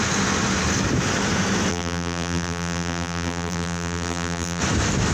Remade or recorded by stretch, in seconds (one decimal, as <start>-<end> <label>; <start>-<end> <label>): 0.0-1.7 recorded; 1.7-4.6 remade; 4.6-5.1 recorded